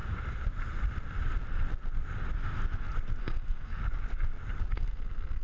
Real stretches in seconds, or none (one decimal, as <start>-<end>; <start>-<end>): 0.0-3.2; 3.8-4.7